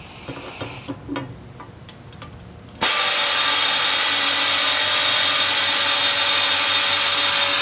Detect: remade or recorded recorded